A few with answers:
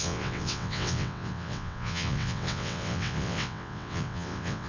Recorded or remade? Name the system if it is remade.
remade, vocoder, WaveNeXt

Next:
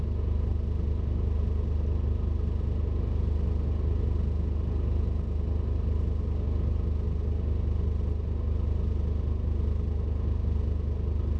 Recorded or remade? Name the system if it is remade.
recorded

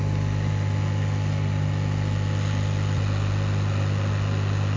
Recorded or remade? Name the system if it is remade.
recorded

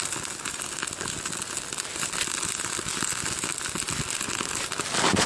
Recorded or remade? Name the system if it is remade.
recorded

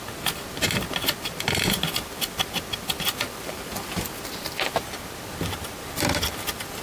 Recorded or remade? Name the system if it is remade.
recorded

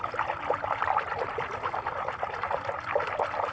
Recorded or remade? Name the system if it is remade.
recorded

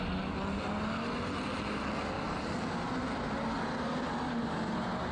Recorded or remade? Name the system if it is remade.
recorded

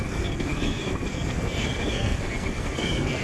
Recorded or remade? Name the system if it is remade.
remade, codec, SNAC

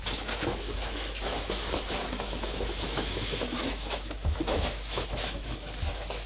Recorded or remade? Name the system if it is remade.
remade, autoencoder, DAC-VAE